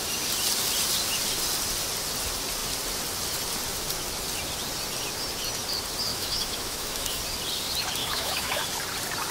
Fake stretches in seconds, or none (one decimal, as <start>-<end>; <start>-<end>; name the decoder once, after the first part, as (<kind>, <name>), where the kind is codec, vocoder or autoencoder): 6.1-7.2 (autoencoder, DAC-VAE); 8.0-8.6